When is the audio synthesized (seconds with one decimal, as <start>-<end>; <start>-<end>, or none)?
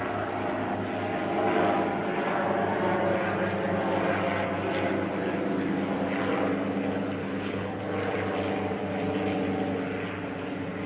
7.2-7.8